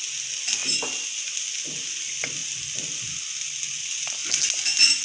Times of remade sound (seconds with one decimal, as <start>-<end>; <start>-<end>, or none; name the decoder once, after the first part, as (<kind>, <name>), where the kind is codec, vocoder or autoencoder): none